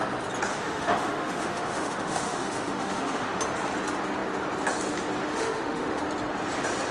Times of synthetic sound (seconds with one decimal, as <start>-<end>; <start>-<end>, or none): 0.5-3.4; 5.3-6.0